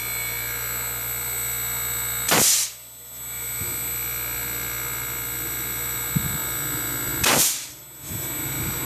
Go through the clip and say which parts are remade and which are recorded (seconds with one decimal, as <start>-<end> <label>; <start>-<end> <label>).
0.0-8.8 recorded

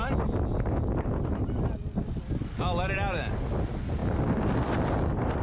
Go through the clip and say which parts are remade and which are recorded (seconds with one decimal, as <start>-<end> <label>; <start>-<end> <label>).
0.0-5.4 recorded

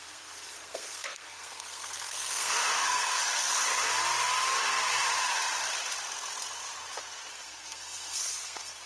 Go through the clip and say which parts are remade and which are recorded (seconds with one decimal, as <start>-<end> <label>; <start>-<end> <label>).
0.0-3.2 remade; 3.2-7.3 recorded; 7.3-8.9 remade

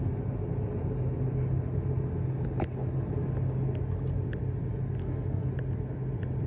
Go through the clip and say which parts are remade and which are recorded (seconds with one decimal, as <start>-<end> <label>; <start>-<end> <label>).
0.0-5.0 recorded; 5.0-5.5 remade; 5.5-6.5 recorded

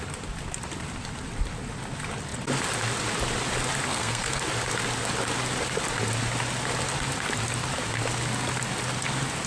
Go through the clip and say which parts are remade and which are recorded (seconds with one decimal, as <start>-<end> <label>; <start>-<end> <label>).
0.0-3.9 recorded; 3.9-4.4 remade; 4.4-9.5 recorded

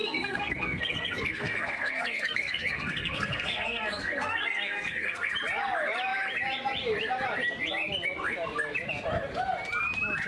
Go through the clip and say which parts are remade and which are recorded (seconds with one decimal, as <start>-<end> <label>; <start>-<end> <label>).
0.0-5.3 remade; 5.3-10.3 recorded

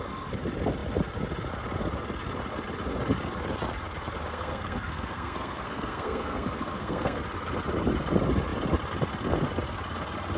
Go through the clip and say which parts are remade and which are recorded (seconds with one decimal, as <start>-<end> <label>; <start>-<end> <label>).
0.0-4.3 recorded; 4.3-7.2 remade; 7.2-10.4 recorded